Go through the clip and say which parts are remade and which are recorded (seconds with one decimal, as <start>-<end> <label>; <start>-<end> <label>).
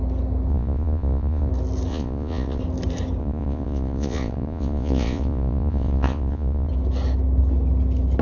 0.0-0.5 recorded; 0.5-1.5 remade; 1.5-1.9 recorded; 1.9-2.6 remade; 2.6-3.2 recorded; 3.2-6.7 remade; 6.7-8.2 recorded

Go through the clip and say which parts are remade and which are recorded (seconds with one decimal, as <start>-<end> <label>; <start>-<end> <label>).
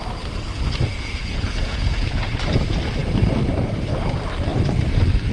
0.0-0.9 recorded; 0.9-2.3 remade; 2.3-5.3 recorded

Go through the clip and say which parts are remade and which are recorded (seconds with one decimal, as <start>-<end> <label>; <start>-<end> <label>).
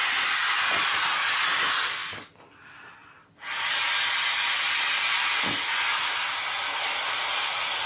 0.0-7.9 recorded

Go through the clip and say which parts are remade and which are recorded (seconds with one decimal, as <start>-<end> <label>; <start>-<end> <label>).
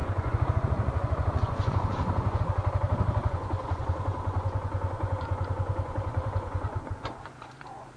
0.0-2.4 remade; 2.4-3.2 recorded; 3.2-8.0 remade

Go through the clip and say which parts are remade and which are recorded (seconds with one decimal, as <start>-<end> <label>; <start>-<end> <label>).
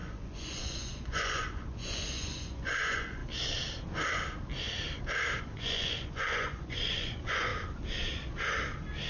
0.0-3.2 remade; 3.2-5.4 recorded; 5.4-7.5 remade; 7.5-9.1 recorded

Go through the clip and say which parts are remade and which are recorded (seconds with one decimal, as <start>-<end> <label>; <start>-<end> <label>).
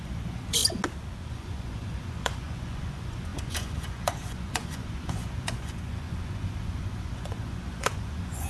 0.0-0.6 remade; 0.6-1.3 recorded; 1.3-8.5 remade